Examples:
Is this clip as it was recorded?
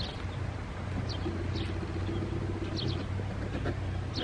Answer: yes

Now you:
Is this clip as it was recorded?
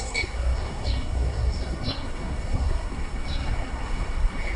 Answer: no